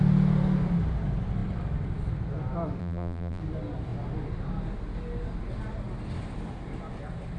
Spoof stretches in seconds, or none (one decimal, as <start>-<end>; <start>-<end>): 2.8-3.4